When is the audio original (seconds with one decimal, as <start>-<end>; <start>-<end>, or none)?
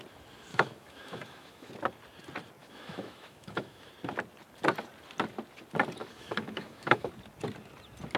0.0-0.5; 1.7-2.6; 3.9-6.0; 7.1-8.2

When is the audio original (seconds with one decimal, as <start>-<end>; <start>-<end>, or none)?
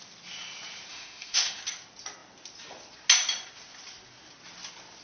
0.0-0.9; 1.6-5.0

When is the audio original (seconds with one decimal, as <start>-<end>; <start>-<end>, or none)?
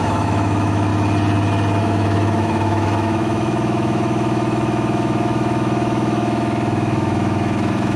0.9-1.8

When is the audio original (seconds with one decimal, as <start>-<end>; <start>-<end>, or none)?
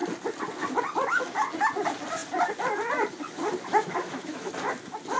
0.0-3.7; 4.5-5.2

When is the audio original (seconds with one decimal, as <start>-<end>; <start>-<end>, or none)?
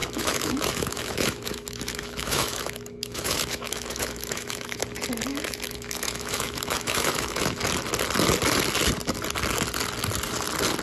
4.8-5.3; 7.6-10.8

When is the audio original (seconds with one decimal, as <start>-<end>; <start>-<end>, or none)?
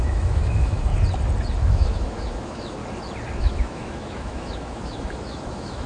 0.9-1.6; 2.8-3.4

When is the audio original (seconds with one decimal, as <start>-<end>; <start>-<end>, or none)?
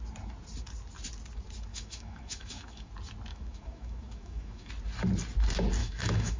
0.0-1.7; 2.9-3.3; 4.7-5.8